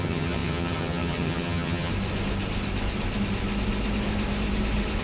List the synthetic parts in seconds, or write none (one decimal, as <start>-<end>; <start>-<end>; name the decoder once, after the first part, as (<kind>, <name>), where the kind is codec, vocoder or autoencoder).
0.0-1.9 (vocoder, HiFi-GAN)